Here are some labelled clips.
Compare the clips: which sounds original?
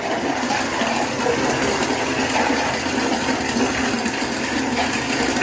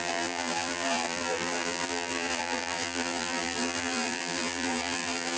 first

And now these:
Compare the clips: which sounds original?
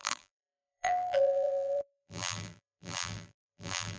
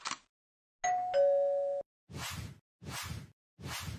second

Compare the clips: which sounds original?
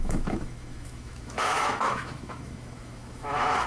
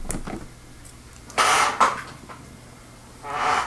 second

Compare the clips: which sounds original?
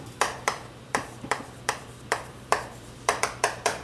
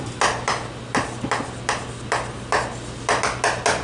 second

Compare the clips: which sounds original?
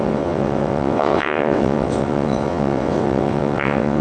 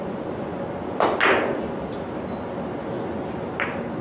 second